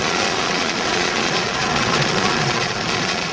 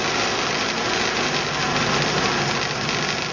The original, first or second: second